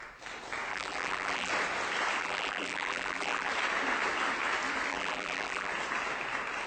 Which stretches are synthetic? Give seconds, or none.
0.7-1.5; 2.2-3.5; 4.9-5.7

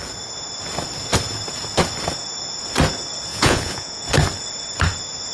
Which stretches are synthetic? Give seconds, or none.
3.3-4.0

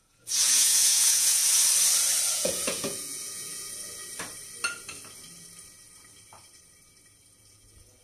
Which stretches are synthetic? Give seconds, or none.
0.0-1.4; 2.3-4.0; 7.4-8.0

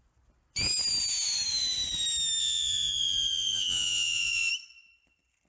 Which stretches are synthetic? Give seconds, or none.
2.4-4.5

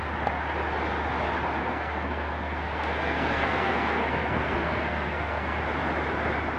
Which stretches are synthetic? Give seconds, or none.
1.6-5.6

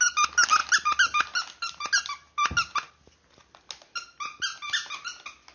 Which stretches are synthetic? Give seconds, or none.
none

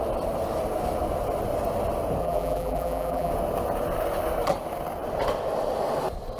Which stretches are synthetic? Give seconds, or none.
2.2-3.3